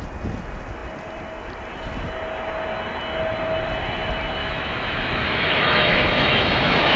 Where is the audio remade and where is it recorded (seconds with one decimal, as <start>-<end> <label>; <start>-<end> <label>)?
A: 0.0-4.4 recorded; 4.4-7.0 remade